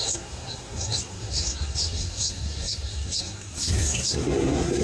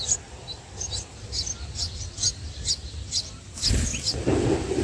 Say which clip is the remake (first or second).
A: first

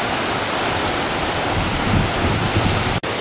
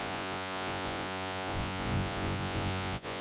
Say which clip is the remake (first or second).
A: second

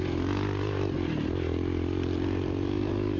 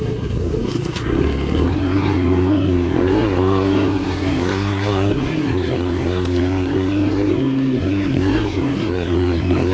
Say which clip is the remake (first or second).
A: second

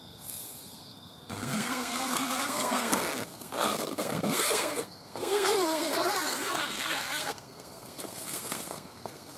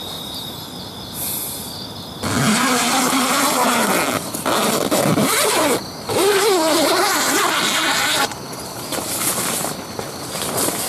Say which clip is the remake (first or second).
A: first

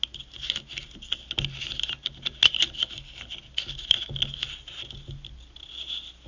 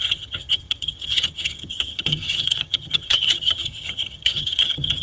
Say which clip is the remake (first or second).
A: second